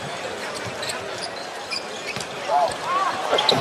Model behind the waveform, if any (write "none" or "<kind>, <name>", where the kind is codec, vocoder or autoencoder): none